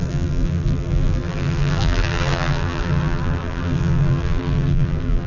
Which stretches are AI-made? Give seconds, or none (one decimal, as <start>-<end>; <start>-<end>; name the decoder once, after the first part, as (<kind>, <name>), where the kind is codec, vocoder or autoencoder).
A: 0.0-5.3 (vocoder, BigVGAN v2)